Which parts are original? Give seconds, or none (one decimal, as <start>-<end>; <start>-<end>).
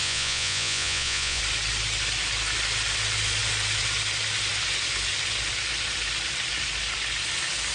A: 1.4-7.7